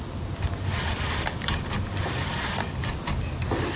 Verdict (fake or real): real